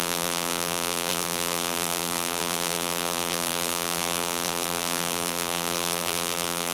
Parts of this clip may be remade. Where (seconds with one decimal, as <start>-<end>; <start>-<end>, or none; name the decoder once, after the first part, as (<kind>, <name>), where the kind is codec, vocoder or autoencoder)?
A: 0.0-6.7 (vocoder, BigVGAN v2)